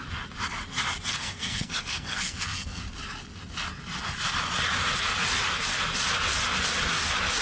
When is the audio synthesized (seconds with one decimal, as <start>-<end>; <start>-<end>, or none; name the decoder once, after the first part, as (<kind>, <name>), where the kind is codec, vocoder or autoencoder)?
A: 1.1-2.8 (codec, SNAC)